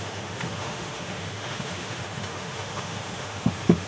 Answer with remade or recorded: remade